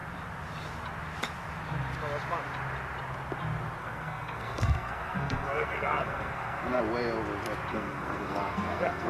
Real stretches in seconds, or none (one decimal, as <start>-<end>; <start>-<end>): 0.0-3.8; 6.8-7.7